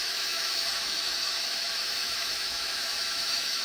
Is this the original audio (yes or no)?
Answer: no